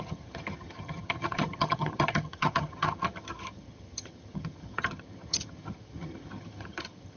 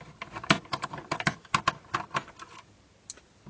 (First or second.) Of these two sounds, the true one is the second